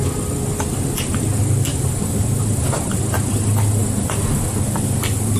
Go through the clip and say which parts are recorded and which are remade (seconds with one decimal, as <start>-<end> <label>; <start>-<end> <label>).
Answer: 0.0-1.7 recorded; 1.7-3.0 remade; 3.0-3.8 recorded; 3.8-4.4 remade; 4.4-5.4 recorded

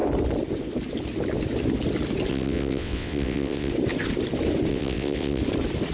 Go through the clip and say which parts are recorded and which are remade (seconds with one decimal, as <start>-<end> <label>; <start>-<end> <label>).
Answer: 0.0-2.3 recorded; 2.3-3.7 remade; 3.7-4.7 recorded; 4.7-5.4 remade; 5.4-5.9 recorded

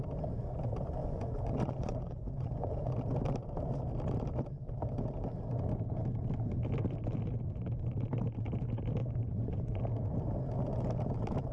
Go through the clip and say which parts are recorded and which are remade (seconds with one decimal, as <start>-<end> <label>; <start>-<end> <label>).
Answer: 0.0-1.0 recorded; 1.0-2.9 remade; 2.9-9.0 recorded; 9.0-9.8 remade; 9.8-11.5 recorded

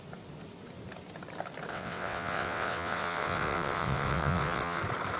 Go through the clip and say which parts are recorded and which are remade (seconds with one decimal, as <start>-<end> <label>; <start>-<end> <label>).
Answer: 0.0-1.7 recorded; 1.7-4.8 remade; 4.8-5.2 recorded

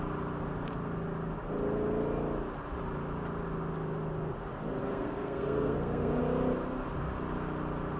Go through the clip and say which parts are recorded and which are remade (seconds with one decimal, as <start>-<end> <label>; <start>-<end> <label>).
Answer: 0.0-4.8 recorded; 4.8-6.2 remade; 6.2-8.0 recorded